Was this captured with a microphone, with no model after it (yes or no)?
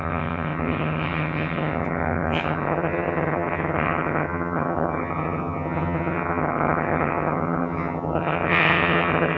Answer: no